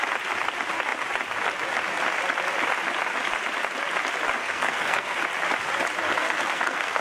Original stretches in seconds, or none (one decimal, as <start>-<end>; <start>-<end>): 0.0-4.4; 5.2-6.1